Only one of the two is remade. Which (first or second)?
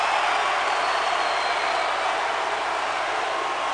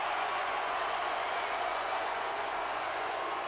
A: second